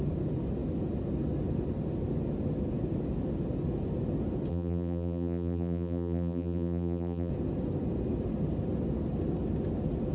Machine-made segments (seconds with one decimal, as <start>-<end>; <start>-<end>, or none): 4.5-7.3